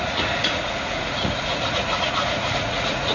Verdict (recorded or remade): remade